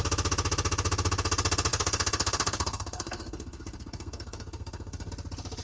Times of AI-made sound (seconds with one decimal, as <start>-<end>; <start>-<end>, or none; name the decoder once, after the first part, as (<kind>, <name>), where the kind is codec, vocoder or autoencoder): 1.7-5.1 (codec, SNAC)

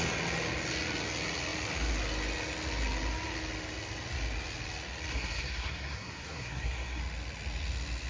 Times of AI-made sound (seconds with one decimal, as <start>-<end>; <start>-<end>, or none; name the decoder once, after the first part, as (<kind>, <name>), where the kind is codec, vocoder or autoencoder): 5.1-7.0 (codec, SNAC)

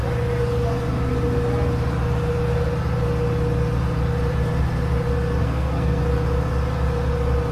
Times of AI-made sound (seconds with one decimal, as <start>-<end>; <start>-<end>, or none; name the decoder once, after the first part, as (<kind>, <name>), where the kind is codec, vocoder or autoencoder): 5.4-6.0 (codec, SNAC)

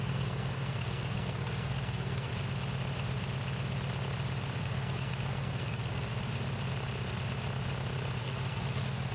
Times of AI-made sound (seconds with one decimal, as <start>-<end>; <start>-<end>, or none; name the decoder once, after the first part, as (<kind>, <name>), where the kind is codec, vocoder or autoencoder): 0.0-2.3 (codec, SNAC); 4.6-6.1; 8.2-9.1

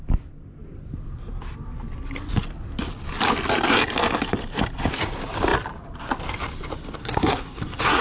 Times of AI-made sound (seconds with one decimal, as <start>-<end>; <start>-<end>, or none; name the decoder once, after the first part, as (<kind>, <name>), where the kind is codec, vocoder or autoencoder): 7.0-8.0 (codec, SNAC)

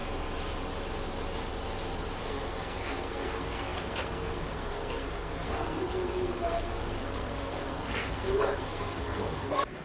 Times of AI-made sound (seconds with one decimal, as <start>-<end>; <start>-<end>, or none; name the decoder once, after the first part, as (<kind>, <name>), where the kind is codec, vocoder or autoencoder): 2.2-9.8 (codec, SNAC)